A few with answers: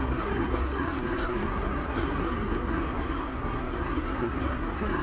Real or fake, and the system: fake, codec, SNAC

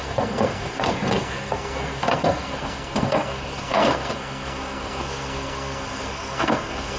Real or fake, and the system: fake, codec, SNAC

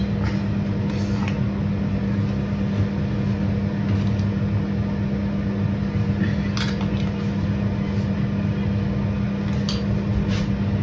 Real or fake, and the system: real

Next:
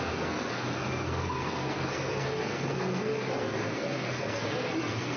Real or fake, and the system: fake, codec, SNAC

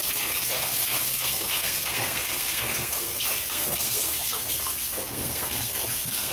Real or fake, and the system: fake, codec, SNAC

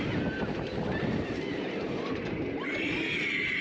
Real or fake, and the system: real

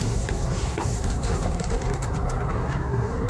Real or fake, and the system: fake, codec, SNAC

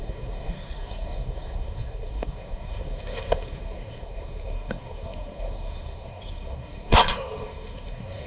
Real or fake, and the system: fake, codec, SNAC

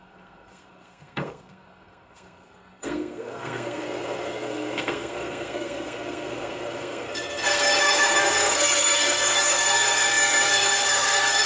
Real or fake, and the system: fake, codec, SNAC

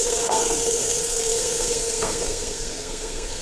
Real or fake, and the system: fake, codec, SNAC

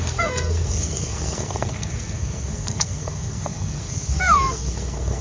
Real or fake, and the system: fake, codec, SNAC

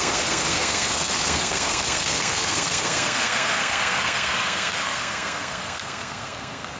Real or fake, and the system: fake, codec, SNAC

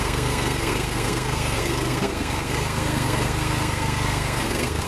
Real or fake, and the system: fake, codec, SNAC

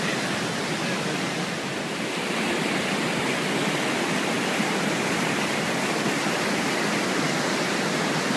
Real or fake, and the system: real